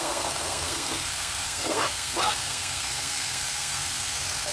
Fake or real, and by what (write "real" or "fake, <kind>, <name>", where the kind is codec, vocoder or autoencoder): fake, codec, SNAC